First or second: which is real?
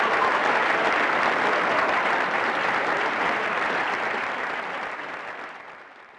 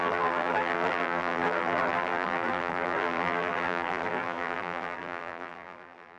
first